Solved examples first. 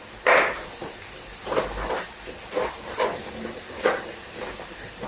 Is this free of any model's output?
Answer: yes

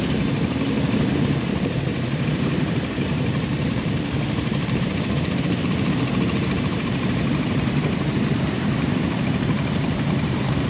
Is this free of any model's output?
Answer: no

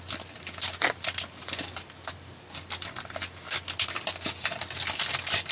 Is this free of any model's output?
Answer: yes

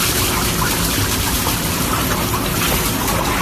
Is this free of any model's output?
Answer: yes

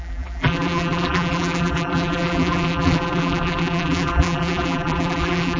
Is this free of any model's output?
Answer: no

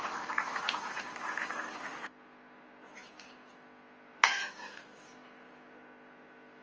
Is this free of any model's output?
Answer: yes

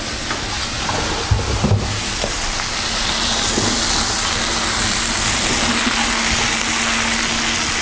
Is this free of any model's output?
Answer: yes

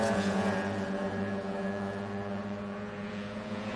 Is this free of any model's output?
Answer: no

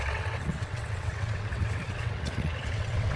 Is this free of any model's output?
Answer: no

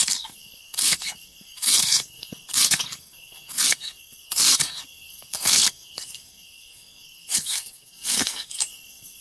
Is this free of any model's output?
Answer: no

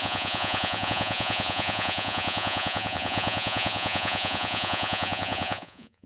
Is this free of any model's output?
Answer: no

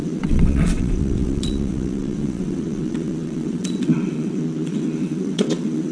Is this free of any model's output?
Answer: no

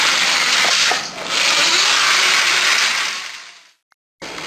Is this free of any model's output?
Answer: yes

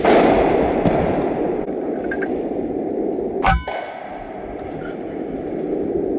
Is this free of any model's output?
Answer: yes